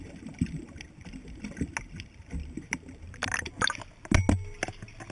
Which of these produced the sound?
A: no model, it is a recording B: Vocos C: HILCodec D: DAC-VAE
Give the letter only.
A